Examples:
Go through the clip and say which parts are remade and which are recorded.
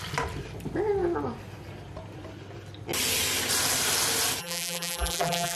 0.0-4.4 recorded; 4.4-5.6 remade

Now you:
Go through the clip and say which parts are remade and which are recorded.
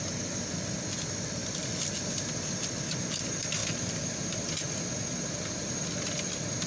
0.0-3.6 recorded; 3.6-4.4 remade; 4.4-6.7 recorded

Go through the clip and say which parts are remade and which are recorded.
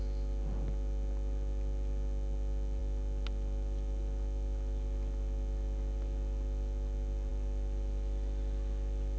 0.0-9.2 recorded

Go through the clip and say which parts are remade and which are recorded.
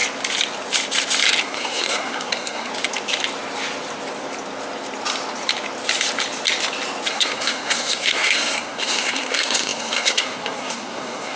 0.0-1.4 recorded; 1.4-2.7 remade; 2.7-7.1 recorded; 7.1-11.4 remade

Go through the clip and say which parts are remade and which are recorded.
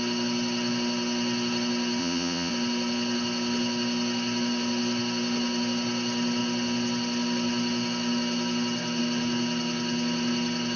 0.0-2.0 recorded; 2.0-2.5 remade; 2.5-10.8 recorded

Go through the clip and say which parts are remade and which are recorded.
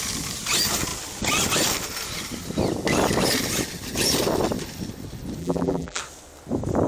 0.0-5.4 recorded; 5.4-6.0 remade; 6.0-6.9 recorded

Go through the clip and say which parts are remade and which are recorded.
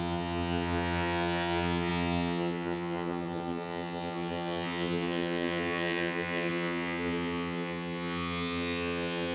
0.0-9.3 remade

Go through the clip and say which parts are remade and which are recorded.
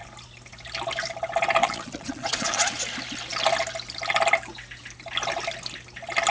0.0-1.6 recorded; 1.6-2.8 remade; 2.8-6.3 recorded